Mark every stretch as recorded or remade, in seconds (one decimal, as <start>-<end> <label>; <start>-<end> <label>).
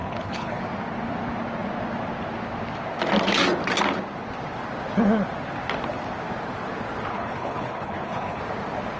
0.0-0.6 remade; 0.6-7.1 recorded; 7.1-8.4 remade; 8.4-9.0 recorded